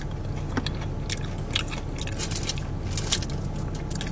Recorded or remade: recorded